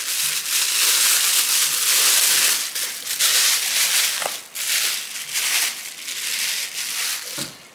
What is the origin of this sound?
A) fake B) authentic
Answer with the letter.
B